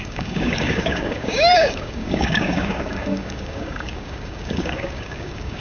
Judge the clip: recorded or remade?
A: remade